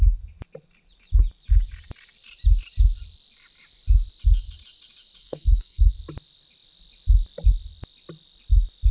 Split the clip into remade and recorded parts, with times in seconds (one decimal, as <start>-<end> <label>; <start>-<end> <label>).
0.0-5.2 recorded; 5.2-5.9 remade; 5.9-8.9 recorded